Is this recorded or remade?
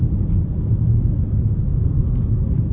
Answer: remade